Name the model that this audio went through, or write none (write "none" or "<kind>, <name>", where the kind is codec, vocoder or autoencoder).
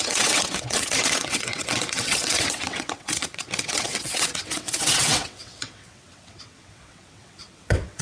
vocoder, WaveNeXt